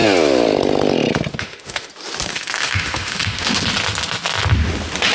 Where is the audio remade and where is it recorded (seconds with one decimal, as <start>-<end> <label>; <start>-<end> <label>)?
0.0-1.3 recorded; 1.3-1.9 remade; 1.9-2.3 recorded; 2.3-3.6 remade; 3.6-5.1 recorded